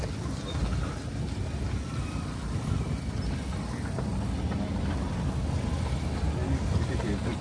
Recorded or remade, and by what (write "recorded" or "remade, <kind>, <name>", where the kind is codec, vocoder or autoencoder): recorded